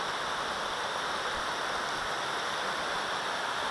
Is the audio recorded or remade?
recorded